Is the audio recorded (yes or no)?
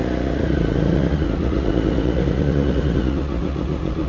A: no